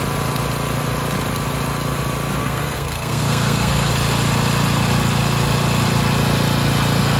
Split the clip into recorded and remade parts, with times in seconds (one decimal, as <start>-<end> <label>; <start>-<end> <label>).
0.0-2.4 recorded; 2.4-3.9 remade; 3.9-7.2 recorded